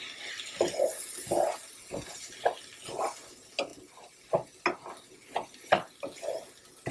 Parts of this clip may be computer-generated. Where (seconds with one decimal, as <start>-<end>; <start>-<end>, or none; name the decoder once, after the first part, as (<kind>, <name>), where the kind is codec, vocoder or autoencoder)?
none